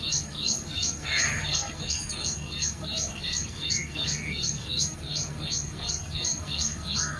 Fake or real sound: fake